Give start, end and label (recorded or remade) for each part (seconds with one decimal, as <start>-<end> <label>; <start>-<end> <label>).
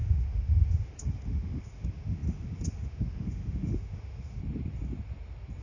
0.0-4.4 remade; 4.4-5.6 recorded